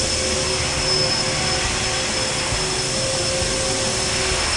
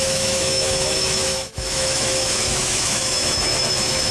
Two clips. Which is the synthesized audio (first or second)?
second